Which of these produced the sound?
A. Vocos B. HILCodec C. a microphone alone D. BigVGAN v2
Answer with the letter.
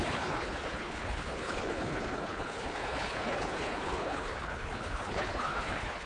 B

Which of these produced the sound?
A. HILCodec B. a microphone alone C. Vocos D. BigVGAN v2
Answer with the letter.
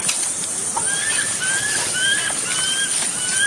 B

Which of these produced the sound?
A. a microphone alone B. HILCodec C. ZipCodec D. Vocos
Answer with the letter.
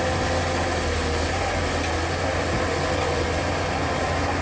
A